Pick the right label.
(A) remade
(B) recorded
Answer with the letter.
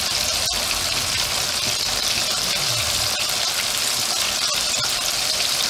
B